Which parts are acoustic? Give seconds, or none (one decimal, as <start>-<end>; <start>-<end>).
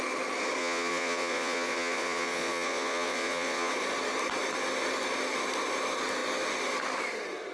0.0-0.6; 3.7-7.5